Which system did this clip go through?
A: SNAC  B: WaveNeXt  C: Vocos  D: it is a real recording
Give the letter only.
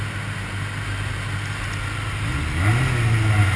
D